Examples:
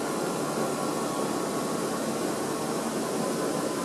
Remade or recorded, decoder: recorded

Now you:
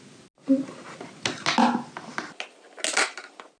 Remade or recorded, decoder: recorded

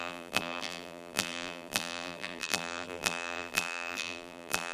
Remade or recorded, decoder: remade, vocoder, BigVGAN v2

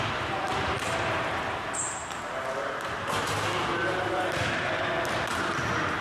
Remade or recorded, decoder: recorded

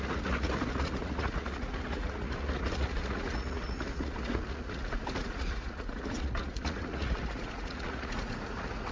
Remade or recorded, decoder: remade, vocoder, Vocos